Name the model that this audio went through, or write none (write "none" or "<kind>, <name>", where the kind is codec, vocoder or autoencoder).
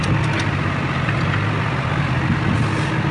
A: none